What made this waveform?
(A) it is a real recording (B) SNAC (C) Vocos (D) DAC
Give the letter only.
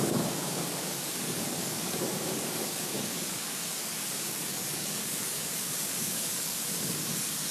D